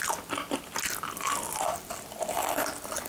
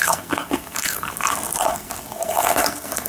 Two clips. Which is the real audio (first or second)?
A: first